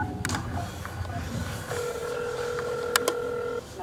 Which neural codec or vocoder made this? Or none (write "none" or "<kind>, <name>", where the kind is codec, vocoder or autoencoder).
none